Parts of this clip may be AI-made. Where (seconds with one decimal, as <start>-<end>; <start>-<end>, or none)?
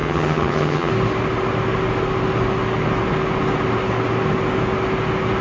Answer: 0.0-0.9